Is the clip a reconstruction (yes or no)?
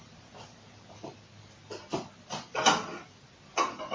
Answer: no